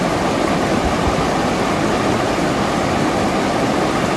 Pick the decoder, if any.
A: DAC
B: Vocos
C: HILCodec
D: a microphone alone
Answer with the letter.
D